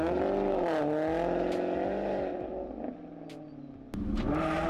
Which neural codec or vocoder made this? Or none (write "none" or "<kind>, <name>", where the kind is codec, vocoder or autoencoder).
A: none